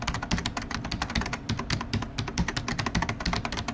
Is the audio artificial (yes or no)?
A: no